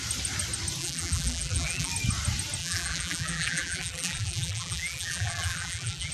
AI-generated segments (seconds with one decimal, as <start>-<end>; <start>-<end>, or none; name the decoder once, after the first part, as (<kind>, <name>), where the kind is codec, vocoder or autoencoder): 0.8-1.9 (vocoder, BigVGAN v2); 2.6-6.1